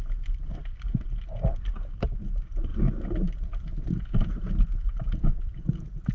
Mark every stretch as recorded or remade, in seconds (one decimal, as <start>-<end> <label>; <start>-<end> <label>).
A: 0.0-6.1 recorded